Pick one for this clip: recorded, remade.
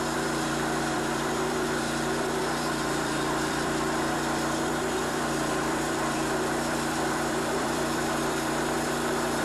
remade